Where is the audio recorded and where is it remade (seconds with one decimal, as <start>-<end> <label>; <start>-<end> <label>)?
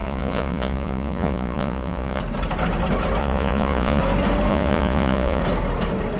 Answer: 0.0-2.2 remade; 2.2-3.2 recorded; 3.2-4.0 remade; 4.0-4.5 recorded; 4.5-5.4 remade; 5.4-6.2 recorded